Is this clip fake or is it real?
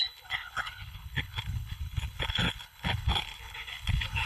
fake